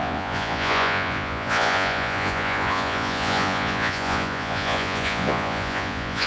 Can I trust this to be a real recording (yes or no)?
no